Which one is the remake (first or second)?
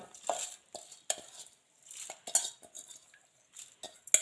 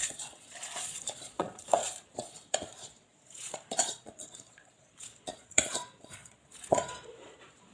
second